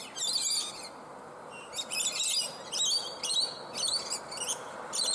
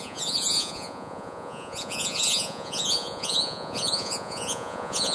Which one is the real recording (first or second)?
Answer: first